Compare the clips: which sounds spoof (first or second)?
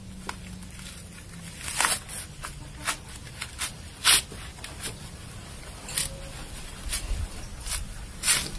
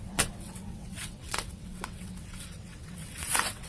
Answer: second